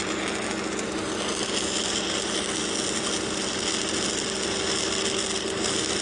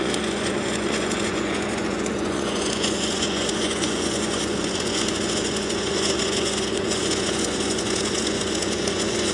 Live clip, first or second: first